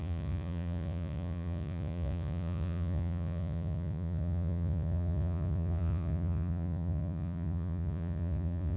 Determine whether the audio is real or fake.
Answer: fake